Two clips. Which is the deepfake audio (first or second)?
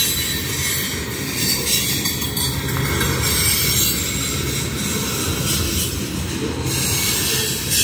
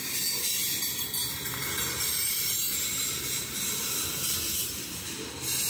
second